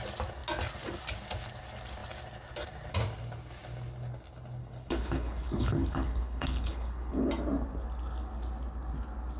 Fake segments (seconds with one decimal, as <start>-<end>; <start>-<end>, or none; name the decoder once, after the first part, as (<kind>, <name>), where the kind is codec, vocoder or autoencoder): 4.6-7.3 (codec, HILCodec)